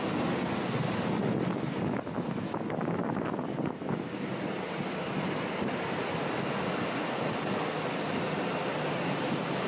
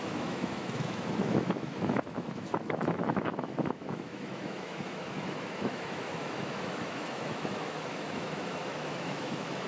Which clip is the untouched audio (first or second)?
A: first